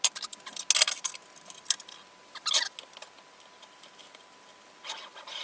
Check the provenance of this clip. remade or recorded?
recorded